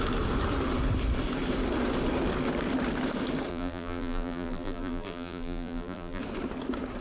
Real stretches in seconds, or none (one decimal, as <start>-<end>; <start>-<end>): 0.0-3.5; 6.2-7.0